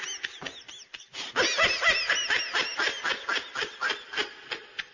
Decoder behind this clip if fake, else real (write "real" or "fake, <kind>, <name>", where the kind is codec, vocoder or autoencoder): real